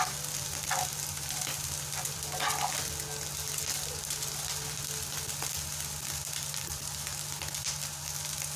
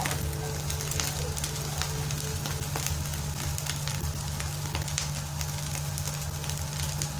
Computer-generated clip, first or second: first